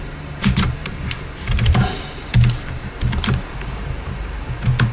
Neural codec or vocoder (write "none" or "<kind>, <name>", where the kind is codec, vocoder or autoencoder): vocoder, BigVGAN v2